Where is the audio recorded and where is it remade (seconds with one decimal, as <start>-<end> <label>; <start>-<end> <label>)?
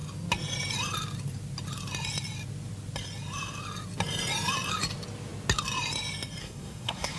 0.0-6.4 recorded; 6.4-7.2 remade